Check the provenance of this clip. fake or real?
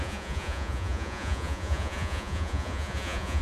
fake